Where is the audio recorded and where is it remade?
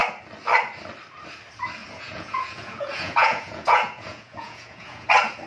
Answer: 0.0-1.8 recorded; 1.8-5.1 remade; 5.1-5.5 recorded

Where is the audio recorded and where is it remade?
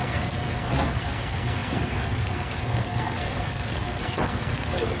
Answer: 0.0-5.0 remade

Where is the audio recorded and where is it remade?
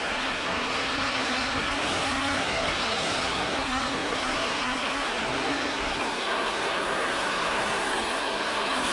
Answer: 0.0-8.9 remade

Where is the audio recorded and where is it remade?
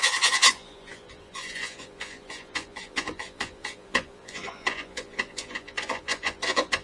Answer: 0.0-6.8 remade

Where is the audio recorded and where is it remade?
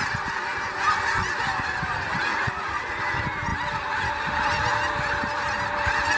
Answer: 0.0-2.3 recorded; 2.3-3.0 remade; 3.0-6.2 recorded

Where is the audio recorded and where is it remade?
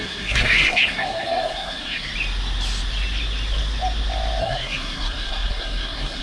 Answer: 0.0-2.1 remade; 2.1-4.4 recorded; 4.4-6.2 remade